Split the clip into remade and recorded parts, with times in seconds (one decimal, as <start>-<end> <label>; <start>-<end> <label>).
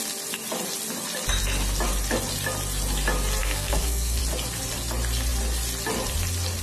0.0-3.4 recorded; 3.4-4.2 remade; 4.2-6.6 recorded